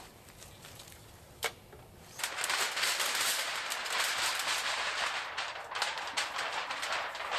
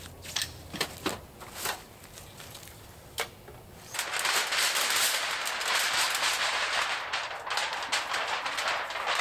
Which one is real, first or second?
second